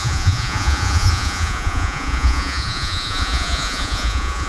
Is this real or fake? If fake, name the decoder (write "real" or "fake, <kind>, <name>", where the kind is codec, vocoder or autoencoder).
fake, vocoder, Vocos